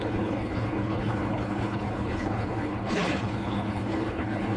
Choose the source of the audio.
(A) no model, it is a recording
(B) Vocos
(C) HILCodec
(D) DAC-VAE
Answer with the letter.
C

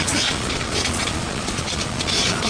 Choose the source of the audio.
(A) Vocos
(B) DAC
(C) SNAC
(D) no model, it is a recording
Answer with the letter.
A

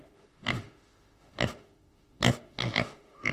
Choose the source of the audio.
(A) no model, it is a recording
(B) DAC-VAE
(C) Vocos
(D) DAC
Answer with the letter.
B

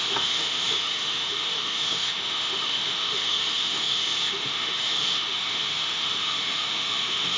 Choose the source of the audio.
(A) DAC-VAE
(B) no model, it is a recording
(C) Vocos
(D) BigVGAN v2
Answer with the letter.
A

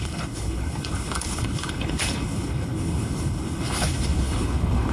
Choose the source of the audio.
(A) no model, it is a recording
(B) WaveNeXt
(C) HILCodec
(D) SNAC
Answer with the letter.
C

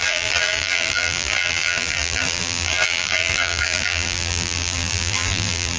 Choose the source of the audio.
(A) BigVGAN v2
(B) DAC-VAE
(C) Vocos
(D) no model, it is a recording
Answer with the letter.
A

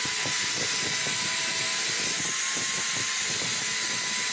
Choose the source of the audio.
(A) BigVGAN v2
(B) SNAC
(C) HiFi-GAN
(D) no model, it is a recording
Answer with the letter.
D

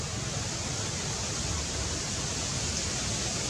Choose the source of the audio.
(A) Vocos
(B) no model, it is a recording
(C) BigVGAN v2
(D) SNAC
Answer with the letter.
B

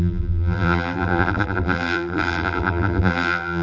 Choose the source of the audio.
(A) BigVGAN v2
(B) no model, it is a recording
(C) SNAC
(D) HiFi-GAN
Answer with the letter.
A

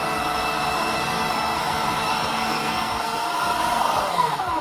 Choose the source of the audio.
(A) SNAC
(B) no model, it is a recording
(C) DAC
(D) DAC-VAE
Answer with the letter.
A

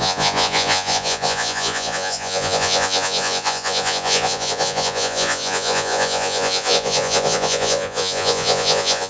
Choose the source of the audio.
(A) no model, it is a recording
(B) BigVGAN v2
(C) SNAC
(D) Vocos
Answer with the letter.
D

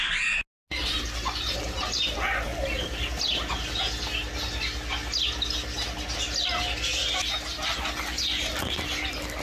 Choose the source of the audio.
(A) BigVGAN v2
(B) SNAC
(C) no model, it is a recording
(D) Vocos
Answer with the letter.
C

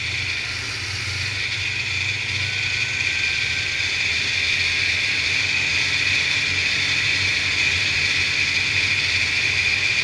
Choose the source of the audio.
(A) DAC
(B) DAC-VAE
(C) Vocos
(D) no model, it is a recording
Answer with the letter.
D